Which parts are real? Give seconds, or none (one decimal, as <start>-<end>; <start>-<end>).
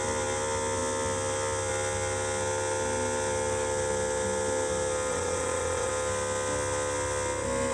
0.0-5.1; 5.9-7.7